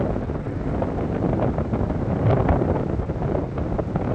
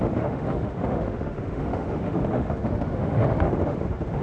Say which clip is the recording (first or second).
first